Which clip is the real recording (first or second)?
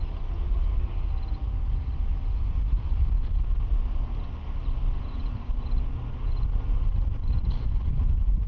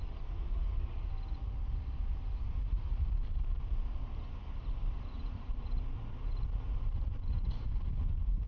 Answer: first